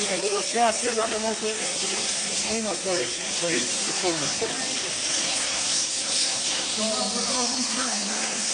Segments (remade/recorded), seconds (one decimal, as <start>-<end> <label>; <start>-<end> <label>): 0.0-4.5 remade; 4.5-5.1 recorded; 5.1-6.8 remade; 6.8-7.3 recorded; 7.3-8.5 remade